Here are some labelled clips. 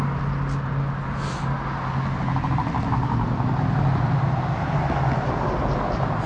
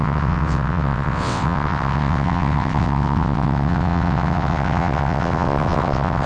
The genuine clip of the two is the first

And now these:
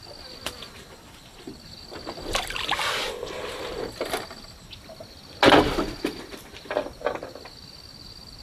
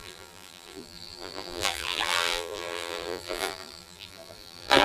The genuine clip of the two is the first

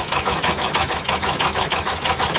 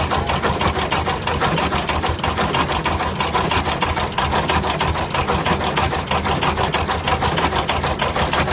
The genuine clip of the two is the second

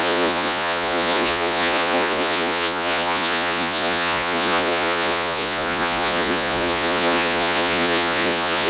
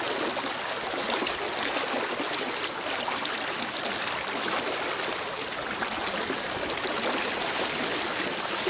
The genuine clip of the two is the second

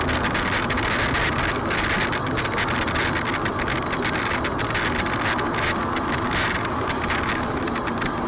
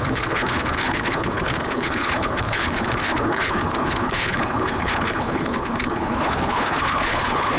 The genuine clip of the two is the first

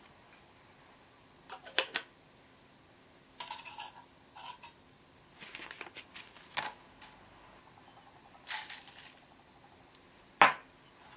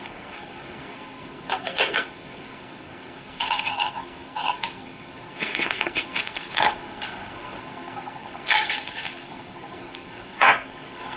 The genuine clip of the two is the first